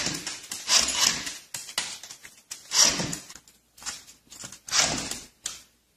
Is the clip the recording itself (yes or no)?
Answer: yes